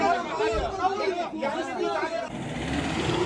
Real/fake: real